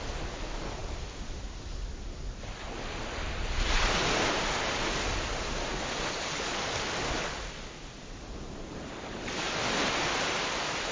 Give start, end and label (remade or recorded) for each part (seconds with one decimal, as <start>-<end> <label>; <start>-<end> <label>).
0.0-10.9 recorded